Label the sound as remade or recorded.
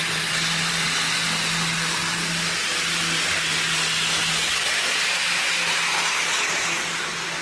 recorded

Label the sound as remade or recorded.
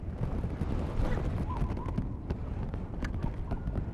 recorded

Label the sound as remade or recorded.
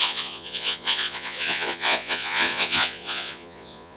remade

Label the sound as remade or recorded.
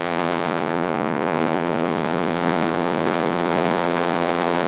remade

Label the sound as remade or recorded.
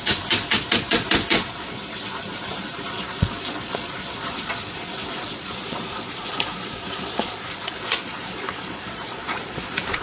remade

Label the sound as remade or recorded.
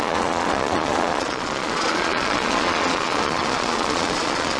remade